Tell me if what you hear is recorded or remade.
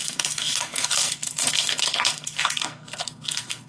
remade